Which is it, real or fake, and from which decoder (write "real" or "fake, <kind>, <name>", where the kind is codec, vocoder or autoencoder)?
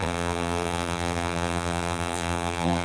fake, vocoder, BigVGAN v2